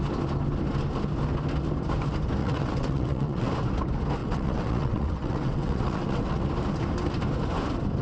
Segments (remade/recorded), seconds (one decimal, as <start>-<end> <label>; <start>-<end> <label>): 0.0-2.4 recorded; 2.4-3.5 remade; 3.5-4.2 recorded; 4.2-6.4 remade; 6.4-8.0 recorded